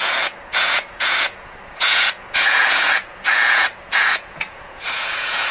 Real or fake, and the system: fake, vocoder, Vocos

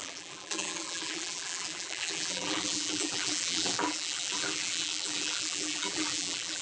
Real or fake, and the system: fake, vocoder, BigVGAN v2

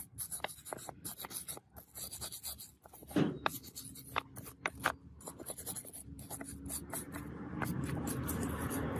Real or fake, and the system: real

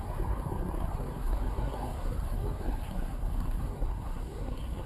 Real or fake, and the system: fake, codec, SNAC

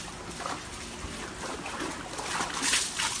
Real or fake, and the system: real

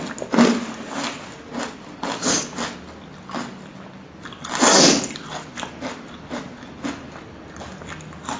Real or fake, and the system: real